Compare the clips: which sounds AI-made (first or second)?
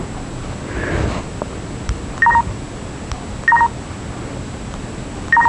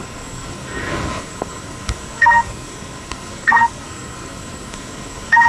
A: second